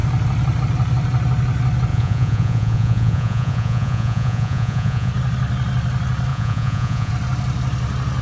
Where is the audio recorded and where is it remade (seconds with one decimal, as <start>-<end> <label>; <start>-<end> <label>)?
0.0-1.9 recorded; 1.9-5.1 remade; 5.1-6.3 recorded; 6.3-7.1 remade; 7.1-8.2 recorded